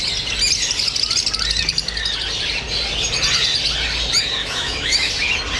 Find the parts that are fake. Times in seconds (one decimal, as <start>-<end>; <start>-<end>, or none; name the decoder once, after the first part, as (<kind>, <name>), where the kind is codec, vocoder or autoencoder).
4.4-5.1 (autoencoder, DAC-VAE)